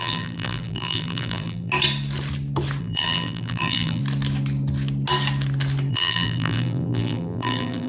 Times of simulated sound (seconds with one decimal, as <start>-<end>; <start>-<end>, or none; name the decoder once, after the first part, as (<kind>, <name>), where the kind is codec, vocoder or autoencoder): 0.0-1.7 (vocoder, BigVGAN v2); 2.8-4.0; 5.9-7.9